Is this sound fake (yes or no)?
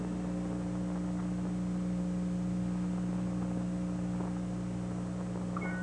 no